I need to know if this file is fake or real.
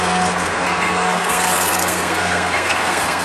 fake